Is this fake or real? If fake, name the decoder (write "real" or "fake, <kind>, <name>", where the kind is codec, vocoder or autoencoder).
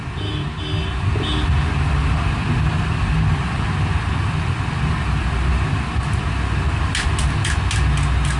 real